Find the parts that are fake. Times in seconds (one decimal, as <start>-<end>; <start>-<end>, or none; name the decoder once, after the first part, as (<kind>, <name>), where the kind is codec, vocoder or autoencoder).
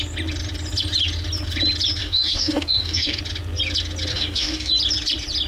2.0-3.2 (codec, DAC); 4.1-4.7